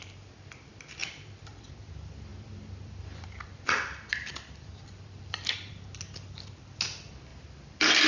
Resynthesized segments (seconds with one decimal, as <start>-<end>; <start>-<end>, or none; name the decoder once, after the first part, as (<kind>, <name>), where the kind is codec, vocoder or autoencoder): 1.0-1.9 (vocoder, BigVGAN v2); 2.3-5.7